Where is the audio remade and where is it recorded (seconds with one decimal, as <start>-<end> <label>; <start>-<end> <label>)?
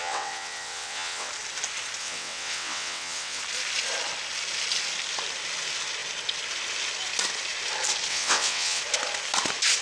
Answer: 0.0-1.3 remade; 1.3-2.0 recorded; 2.0-3.4 remade; 3.4-8.1 recorded; 8.1-8.8 remade; 8.8-9.8 recorded